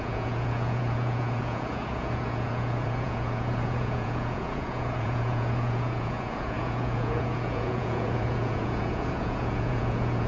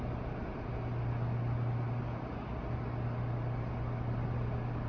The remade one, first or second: first